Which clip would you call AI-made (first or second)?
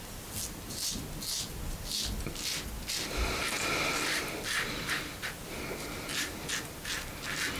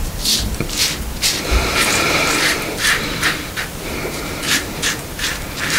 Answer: second